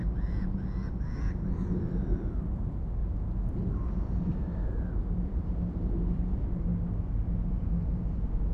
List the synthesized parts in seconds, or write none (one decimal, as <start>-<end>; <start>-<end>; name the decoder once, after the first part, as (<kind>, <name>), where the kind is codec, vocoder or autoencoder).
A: 0.9-3.0 (vocoder, BigVGAN v2); 4.2-6.7; 7.5-8.5